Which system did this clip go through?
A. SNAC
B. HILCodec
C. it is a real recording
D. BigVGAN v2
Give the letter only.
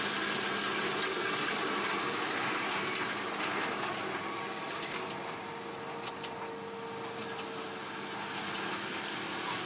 C